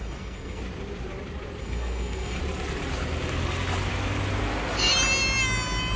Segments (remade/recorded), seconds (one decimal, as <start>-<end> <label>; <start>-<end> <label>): 0.0-0.6 remade; 0.6-1.6 recorded; 1.6-2.4 remade; 2.4-6.0 recorded